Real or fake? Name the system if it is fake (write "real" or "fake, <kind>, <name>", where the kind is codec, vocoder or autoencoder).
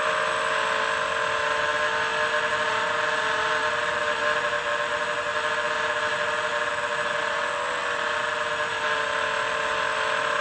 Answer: real